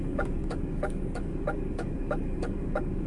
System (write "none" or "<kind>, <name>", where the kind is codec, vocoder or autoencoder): codec, DAC